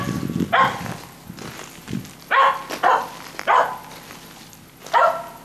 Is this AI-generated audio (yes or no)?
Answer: no